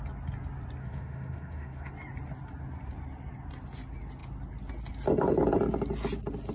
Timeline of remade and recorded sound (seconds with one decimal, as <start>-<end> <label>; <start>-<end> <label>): 0.0-0.8 recorded; 0.8-1.9 remade; 1.9-6.5 recorded